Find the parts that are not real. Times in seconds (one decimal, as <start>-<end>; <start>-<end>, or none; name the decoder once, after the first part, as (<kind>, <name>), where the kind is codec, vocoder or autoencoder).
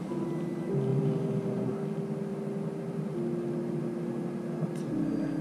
none